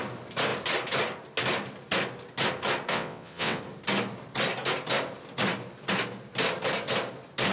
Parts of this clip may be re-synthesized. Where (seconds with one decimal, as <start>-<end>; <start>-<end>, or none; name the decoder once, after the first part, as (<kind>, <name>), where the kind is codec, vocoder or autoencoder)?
2.9-3.6 (vocoder, WaveNeXt)